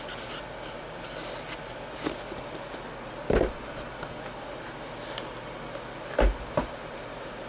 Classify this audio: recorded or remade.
recorded